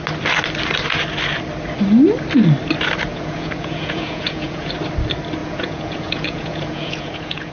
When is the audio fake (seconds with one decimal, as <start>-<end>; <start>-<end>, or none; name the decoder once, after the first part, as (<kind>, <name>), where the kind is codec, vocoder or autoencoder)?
3.1-4.7 (vocoder, Vocos); 5.4-7.5